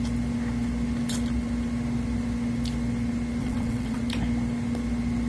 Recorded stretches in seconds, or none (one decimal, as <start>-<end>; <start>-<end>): 0.0-3.4; 4.0-5.3